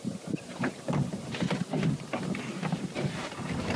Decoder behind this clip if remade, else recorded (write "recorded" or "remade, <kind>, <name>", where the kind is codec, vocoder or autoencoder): remade, vocoder, BigVGAN v2